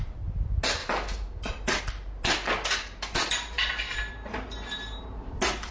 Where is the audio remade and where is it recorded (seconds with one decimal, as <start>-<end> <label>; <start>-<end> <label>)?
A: 0.0-5.7 recorded